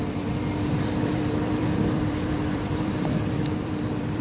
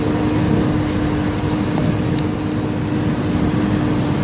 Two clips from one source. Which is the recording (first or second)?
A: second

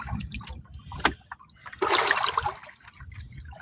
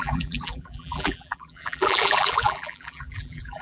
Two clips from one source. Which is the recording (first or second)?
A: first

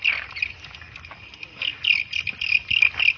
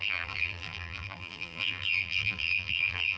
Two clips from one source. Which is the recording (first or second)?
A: first